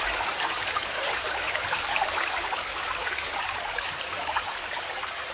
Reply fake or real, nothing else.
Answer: fake